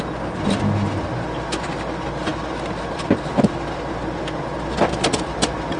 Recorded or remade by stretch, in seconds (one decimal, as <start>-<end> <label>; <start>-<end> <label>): 0.0-5.8 recorded